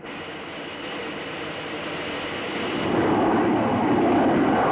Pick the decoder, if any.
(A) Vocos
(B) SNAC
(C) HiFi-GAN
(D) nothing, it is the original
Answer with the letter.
D